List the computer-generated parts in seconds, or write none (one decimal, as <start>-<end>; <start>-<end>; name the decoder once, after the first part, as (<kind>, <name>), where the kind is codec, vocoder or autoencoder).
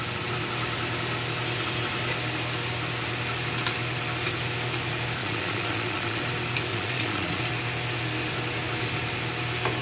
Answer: 5.2-6.2 (vocoder, Vocos); 6.7-7.4